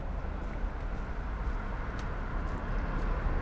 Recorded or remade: recorded